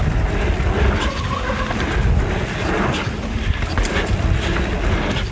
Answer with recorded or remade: recorded